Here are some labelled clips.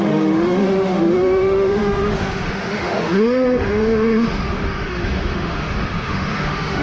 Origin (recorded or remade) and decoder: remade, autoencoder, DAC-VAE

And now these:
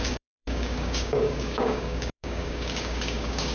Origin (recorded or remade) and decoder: remade, codec, DAC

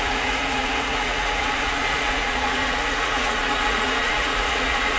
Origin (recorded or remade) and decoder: remade, vocoder, Vocos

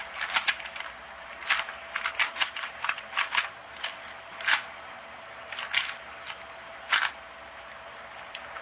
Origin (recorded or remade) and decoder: recorded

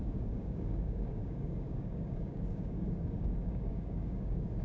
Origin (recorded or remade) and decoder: remade, codec, DAC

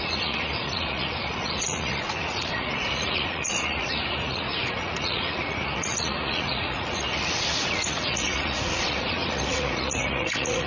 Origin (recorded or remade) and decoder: remade, vocoder, Vocos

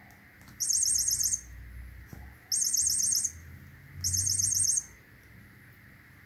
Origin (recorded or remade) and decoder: recorded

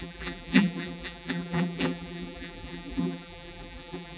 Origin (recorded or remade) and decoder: remade, vocoder, BigVGAN v2